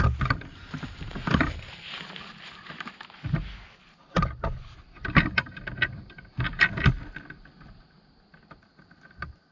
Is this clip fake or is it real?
real